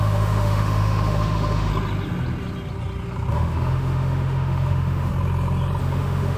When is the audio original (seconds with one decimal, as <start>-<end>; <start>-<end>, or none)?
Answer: 1.7-3.3; 5.1-5.8